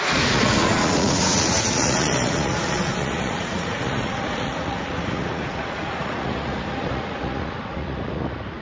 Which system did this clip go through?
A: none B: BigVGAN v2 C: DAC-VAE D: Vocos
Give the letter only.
D